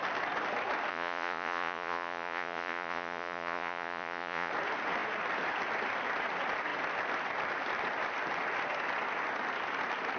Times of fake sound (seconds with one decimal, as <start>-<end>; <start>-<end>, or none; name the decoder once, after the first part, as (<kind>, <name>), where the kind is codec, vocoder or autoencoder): 0.9-4.5 (vocoder, Vocos)